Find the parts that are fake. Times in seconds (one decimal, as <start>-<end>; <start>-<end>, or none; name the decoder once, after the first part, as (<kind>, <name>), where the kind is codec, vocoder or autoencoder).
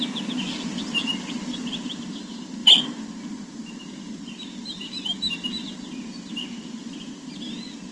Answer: none